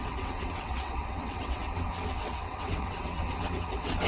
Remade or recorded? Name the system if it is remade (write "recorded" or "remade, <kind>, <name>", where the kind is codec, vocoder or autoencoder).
remade, vocoder, WaveNeXt